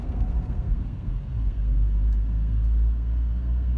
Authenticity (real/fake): fake